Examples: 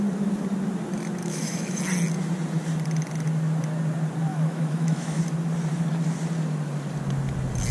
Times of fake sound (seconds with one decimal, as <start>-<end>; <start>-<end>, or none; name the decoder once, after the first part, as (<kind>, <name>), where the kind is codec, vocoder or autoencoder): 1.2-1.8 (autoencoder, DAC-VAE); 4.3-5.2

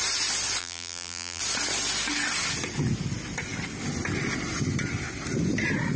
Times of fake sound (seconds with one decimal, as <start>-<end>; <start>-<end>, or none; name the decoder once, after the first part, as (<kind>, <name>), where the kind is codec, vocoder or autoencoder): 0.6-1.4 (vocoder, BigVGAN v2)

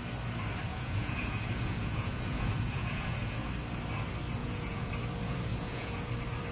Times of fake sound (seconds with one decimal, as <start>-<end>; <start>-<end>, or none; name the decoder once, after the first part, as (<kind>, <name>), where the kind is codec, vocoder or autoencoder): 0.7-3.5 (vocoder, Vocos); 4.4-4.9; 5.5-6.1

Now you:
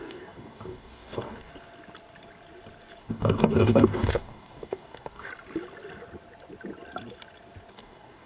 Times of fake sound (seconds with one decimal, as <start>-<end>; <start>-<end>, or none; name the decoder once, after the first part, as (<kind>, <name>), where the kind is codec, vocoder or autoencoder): 0.0-1.5 (codec, DAC); 3.0-5.3; 7.7-8.3

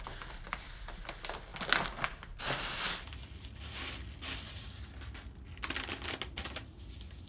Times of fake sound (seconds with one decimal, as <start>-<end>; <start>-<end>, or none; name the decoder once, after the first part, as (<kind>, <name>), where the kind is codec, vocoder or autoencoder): none

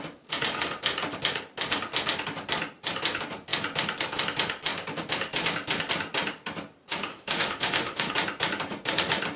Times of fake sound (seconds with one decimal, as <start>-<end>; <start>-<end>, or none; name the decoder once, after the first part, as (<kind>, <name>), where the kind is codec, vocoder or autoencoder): 7.1-8.1 (autoencoder, DAC-VAE)

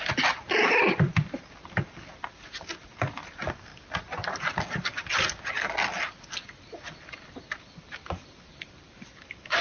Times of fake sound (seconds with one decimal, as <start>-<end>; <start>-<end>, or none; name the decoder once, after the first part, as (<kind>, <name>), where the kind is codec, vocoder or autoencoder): 0.0-3.7 (vocoder, BigVGAN v2); 7.0-9.6

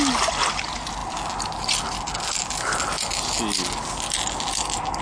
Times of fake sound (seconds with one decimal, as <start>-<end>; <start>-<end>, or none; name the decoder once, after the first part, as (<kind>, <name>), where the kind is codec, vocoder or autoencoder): none